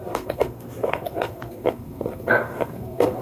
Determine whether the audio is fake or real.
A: fake